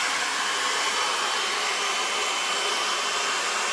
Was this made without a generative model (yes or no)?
yes